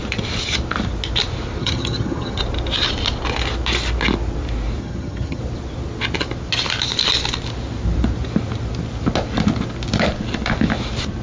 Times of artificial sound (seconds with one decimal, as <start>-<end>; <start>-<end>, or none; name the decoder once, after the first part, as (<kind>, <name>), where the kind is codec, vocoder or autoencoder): 1.6-2.4 (vocoder, HiFi-GAN); 4.8-5.4